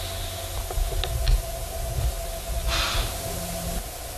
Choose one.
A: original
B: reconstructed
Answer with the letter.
A